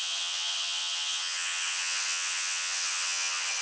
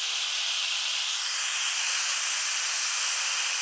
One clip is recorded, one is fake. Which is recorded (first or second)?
second